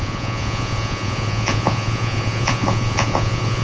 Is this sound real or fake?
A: fake